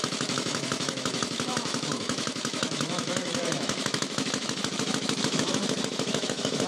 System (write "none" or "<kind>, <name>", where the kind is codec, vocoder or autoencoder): autoencoder, DAC-VAE